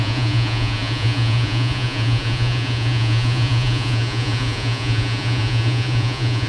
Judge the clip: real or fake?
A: fake